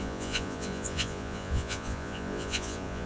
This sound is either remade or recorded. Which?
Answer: remade